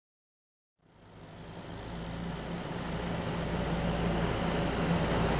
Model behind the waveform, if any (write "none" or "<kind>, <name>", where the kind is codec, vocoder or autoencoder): none